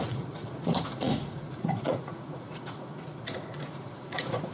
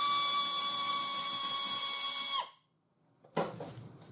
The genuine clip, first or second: second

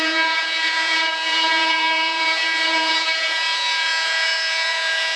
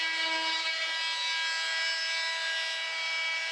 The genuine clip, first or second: second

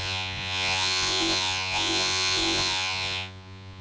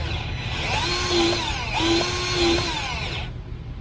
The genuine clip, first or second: second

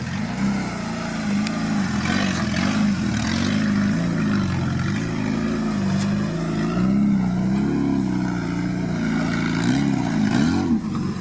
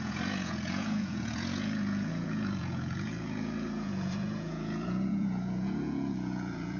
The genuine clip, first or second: first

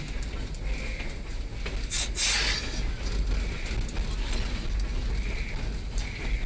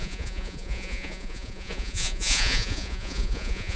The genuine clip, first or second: first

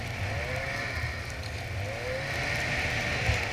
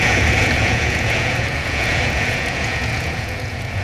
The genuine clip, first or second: first